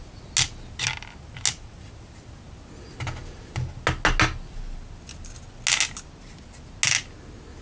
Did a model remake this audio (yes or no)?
no